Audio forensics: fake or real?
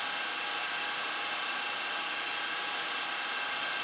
real